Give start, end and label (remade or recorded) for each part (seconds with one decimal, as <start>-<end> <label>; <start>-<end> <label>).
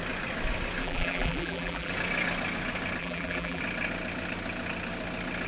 0.0-0.8 recorded; 0.8-1.9 remade; 1.9-3.0 recorded; 3.0-3.6 remade; 3.6-5.5 recorded